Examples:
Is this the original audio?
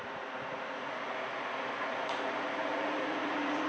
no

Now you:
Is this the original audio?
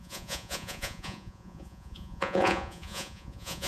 no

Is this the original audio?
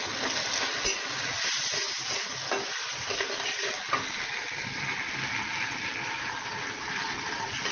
yes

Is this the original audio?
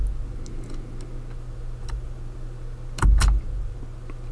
yes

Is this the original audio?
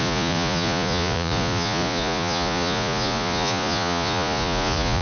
no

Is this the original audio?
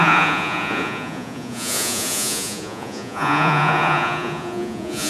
no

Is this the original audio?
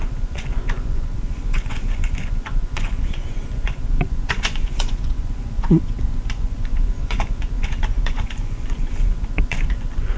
no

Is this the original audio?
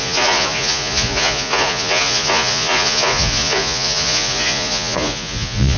no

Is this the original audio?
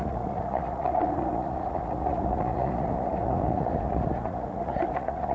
no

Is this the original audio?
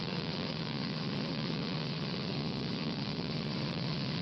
no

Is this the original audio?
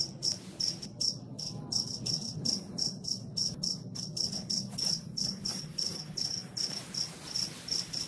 yes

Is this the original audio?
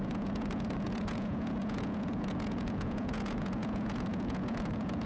no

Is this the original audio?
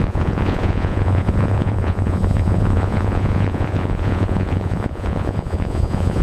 no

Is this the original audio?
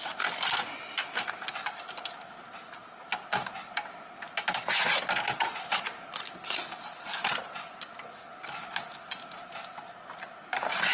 yes